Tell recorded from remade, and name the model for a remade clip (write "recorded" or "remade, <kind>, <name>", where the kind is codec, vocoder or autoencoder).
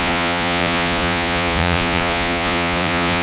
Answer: remade, vocoder, Vocos